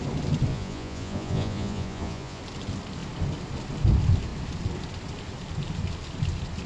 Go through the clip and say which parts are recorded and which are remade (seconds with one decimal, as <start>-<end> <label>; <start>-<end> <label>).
0.0-0.5 recorded; 0.5-2.4 remade; 2.4-6.7 recorded